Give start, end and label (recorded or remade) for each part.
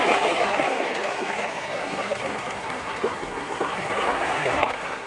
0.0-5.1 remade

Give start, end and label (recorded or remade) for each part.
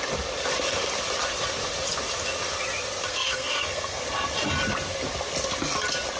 0.0-3.1 recorded; 3.1-4.0 remade; 4.0-6.2 recorded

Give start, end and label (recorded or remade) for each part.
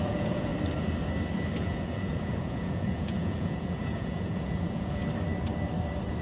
0.0-0.5 remade; 0.5-1.6 recorded; 1.6-5.0 remade; 5.0-6.2 recorded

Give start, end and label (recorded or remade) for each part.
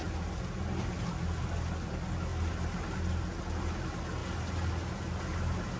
0.0-5.8 recorded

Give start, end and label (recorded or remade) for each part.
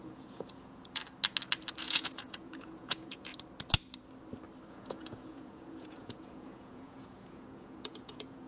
0.0-1.0 remade; 1.0-1.8 recorded; 1.8-3.3 remade; 3.3-4.7 recorded; 4.7-8.5 remade